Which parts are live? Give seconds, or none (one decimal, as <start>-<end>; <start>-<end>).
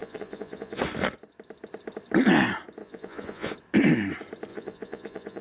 0.8-2.8; 3.5-4.5